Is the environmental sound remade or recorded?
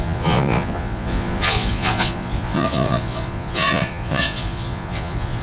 remade